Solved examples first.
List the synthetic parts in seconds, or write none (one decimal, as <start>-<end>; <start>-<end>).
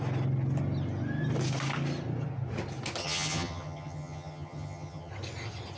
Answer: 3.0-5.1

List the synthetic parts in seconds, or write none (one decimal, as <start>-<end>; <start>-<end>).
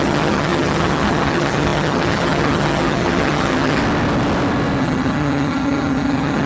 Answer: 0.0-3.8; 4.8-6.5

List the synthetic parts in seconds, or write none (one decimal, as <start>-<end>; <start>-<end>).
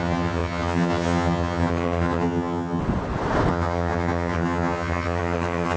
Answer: 0.0-2.8; 3.5-5.8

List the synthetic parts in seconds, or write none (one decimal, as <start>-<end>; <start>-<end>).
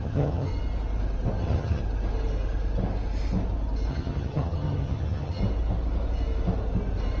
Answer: 0.0-0.5; 1.4-1.8; 3.9-5.4